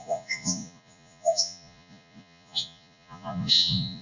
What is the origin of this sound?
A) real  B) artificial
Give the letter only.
B